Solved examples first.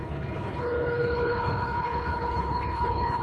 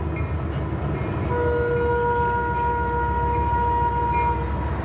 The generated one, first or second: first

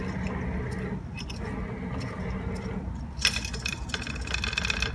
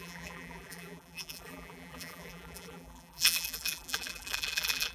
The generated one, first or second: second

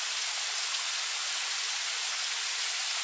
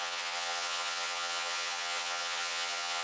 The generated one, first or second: second